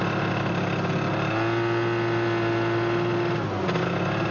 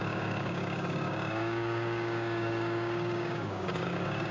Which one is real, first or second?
first